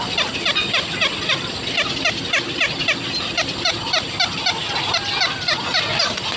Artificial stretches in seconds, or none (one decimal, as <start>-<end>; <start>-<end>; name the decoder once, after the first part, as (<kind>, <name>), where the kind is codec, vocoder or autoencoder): none